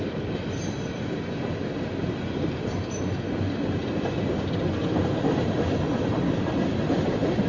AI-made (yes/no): yes